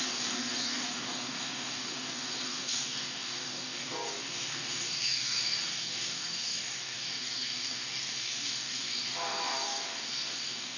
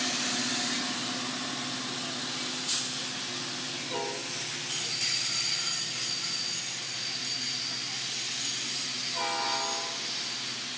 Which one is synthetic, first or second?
first